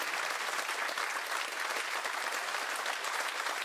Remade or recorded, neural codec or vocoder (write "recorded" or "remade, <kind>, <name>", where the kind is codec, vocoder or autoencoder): recorded